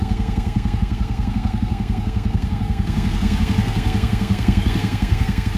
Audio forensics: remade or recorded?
remade